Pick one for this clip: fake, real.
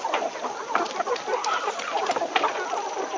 real